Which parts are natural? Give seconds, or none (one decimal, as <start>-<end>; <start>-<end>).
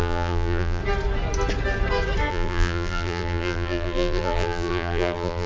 0.8-2.3